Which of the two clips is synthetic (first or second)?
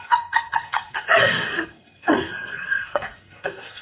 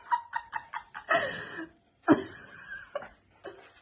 first